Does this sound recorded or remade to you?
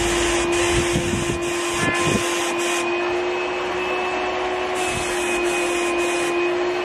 recorded